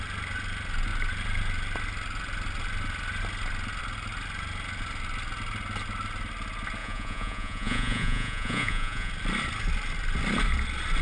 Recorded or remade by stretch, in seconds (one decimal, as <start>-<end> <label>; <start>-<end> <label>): 0.0-6.8 recorded; 6.8-9.1 remade; 9.1-11.0 recorded